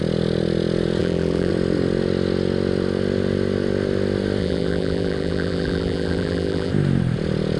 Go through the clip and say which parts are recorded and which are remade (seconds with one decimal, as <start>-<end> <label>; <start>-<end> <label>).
0.0-1.0 recorded; 1.0-1.5 remade; 1.5-4.4 recorded; 4.4-6.7 remade; 6.7-7.6 recorded